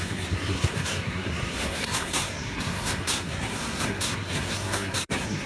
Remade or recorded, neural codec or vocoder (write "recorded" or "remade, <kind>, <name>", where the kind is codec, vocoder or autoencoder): remade, codec, SNAC